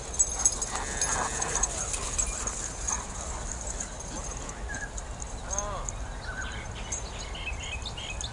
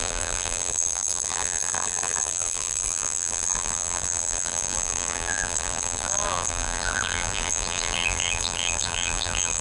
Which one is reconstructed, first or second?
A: second